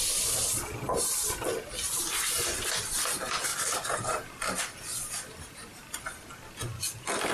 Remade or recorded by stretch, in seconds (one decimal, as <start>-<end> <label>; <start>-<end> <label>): 0.0-3.5 recorded; 3.5-4.6 remade; 4.6-7.3 recorded